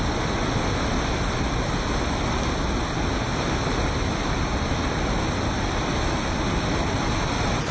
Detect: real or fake real